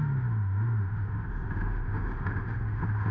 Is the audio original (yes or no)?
no